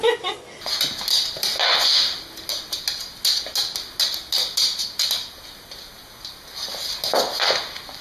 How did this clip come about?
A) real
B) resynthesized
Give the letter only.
A